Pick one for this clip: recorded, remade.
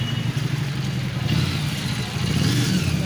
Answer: recorded